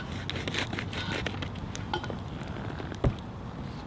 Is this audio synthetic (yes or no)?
no